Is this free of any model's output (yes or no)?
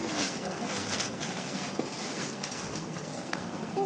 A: no